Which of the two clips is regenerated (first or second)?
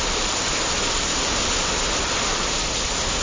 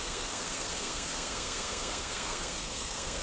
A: second